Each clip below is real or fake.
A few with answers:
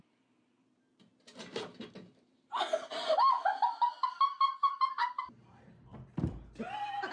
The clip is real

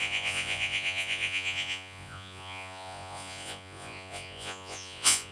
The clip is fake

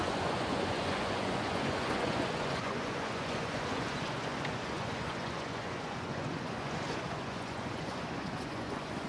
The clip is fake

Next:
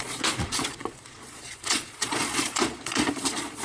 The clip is fake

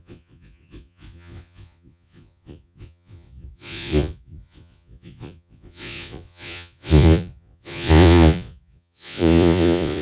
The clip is fake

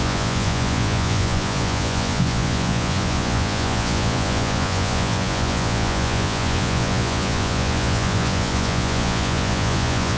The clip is fake